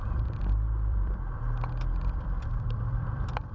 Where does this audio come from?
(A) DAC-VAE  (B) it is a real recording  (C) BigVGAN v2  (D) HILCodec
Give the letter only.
C